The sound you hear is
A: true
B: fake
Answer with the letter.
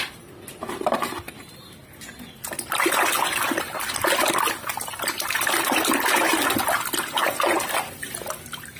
A